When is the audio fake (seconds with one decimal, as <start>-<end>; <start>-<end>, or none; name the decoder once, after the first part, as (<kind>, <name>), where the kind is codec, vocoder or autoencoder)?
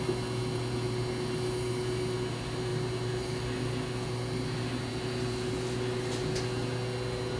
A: none